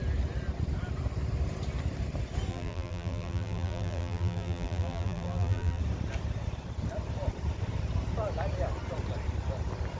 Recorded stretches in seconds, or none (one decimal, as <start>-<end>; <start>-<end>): 0.0-2.5; 5.8-10.0